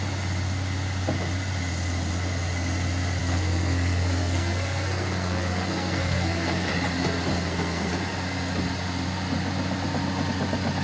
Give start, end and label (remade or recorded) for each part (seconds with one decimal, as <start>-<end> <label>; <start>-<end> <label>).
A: 0.0-3.2 recorded; 3.2-6.7 remade; 6.7-7.3 recorded; 7.3-7.9 remade; 7.9-10.8 recorded